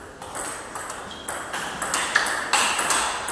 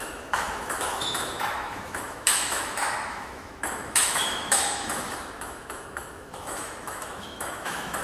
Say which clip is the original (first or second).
first